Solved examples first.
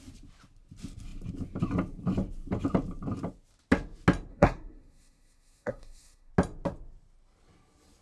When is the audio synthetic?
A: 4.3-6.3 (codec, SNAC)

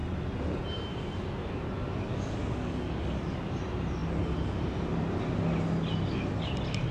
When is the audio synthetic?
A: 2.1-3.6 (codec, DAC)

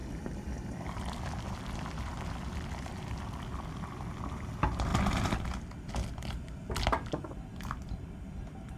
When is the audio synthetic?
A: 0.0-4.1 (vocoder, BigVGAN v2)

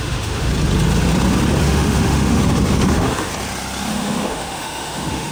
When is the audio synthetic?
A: 0.0-0.5 (autoencoder, DAC-VAE); 1.6-2.4; 2.9-3.3; 3.9-5.3

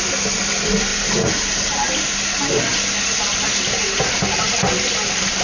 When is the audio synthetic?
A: none

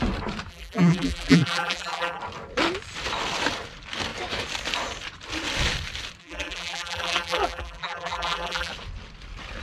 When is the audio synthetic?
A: 0.5-2.2 (vocoder, BigVGAN v2); 6.2-8.7

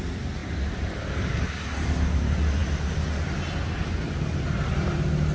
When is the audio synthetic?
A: none